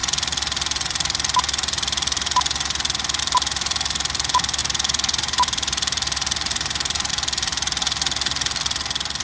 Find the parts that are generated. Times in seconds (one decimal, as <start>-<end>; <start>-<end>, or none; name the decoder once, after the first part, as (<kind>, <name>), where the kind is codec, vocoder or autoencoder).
4.6-7.1 (vocoder, BigVGAN v2)